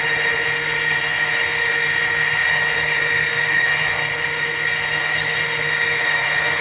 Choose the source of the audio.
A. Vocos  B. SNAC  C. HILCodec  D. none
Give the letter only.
C